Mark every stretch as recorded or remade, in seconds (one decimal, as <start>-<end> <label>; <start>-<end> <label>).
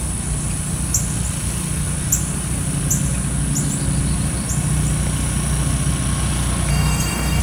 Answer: 0.0-6.7 recorded; 6.7-7.4 remade